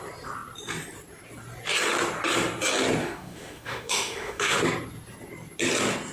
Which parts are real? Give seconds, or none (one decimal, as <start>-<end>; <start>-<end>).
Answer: 0.0-3.0; 4.6-6.1